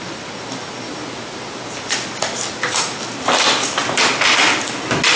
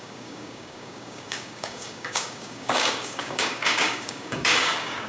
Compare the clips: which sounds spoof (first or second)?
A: second